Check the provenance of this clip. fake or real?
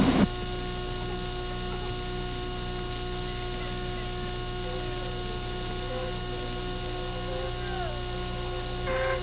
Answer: real